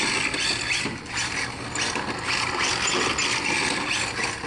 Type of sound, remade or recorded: recorded